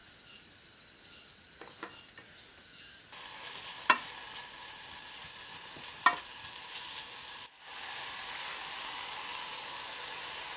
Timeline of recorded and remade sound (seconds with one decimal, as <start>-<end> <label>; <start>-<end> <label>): 0.0-10.6 recorded